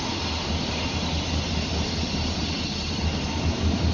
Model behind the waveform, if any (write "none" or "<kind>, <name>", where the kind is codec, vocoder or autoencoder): none